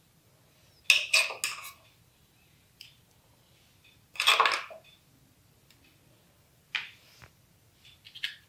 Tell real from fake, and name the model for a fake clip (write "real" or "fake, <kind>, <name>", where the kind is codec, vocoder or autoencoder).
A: real